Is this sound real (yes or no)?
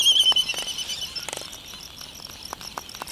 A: yes